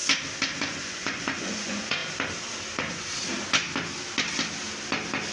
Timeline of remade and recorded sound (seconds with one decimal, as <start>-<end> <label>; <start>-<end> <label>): 0.0-0.6 recorded; 0.6-2.0 remade; 2.0-5.3 recorded